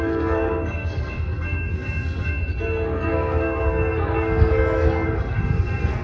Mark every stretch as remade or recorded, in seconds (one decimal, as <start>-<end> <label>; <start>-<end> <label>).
0.0-6.0 remade